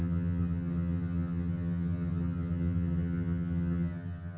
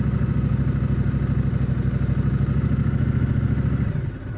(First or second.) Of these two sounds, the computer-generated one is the first